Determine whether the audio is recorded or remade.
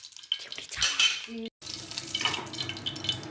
recorded